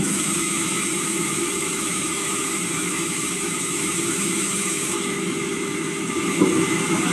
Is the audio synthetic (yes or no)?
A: yes